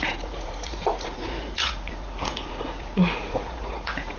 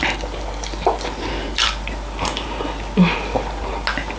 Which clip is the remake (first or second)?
first